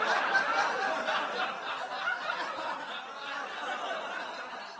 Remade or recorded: recorded